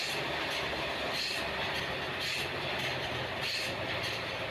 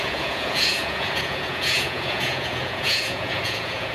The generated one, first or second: second